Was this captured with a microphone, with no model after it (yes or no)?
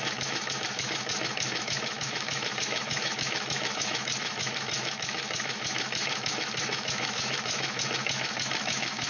no